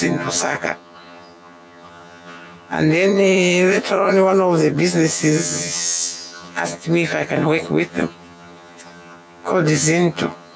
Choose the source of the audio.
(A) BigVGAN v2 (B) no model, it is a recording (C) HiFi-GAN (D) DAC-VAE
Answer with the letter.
C